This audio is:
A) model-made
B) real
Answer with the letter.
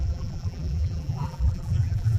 A